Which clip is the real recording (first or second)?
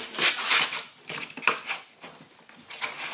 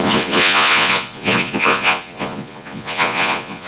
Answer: first